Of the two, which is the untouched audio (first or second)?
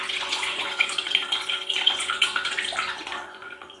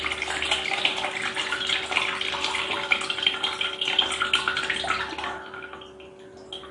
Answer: second